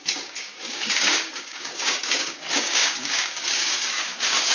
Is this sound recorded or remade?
remade